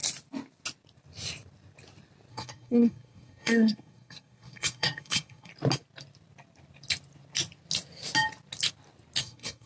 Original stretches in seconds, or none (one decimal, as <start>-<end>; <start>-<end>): 0.0-2.3; 5.5-9.2